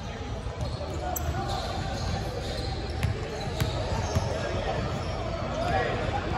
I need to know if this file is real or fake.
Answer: real